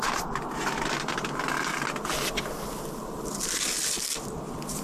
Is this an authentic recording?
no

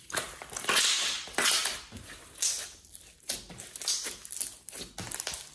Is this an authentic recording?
yes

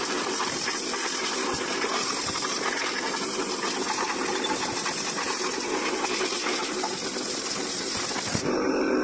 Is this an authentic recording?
no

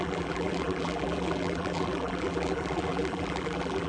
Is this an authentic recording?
no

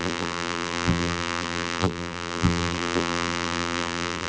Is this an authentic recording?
no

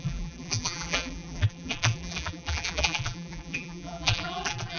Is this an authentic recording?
no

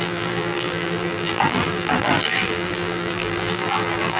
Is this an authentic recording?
no